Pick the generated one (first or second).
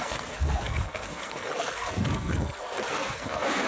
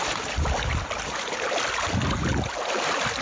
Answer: first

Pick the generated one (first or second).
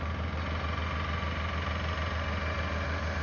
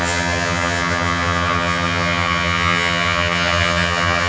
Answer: second